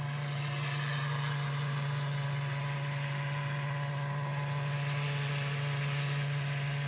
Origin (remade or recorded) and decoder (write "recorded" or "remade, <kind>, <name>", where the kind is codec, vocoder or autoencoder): recorded